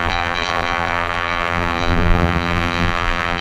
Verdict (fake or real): fake